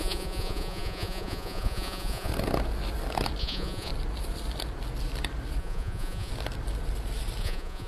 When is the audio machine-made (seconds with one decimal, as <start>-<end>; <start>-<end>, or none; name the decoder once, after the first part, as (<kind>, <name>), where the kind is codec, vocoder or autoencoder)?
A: 0.0-2.3 (vocoder, Vocos); 3.4-3.9; 5.6-6.3; 7.4-7.9